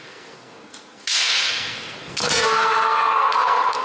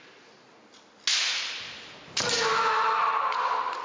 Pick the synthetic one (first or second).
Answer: first